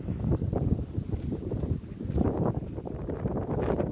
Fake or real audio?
real